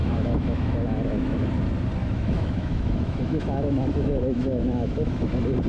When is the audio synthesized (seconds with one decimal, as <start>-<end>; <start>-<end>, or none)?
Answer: 0.0-1.5; 2.0-5.3